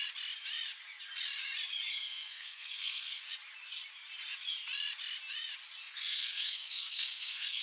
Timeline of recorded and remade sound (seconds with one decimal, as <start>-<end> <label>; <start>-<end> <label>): 0.0-1.9 recorded; 1.9-3.2 remade; 3.2-5.8 recorded; 5.8-7.6 remade